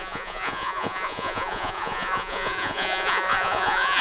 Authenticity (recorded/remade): remade